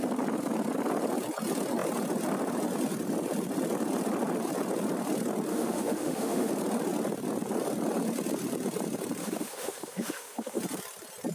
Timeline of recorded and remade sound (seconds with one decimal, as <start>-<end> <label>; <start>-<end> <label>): 0.0-5.5 recorded; 5.5-6.5 remade; 6.5-9.2 recorded; 9.2-10.6 remade; 10.6-11.3 recorded